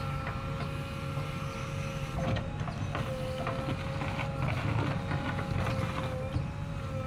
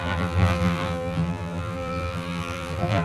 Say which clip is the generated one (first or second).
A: second